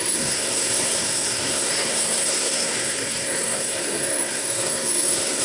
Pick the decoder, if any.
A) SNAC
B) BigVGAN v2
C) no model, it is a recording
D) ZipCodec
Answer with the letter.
A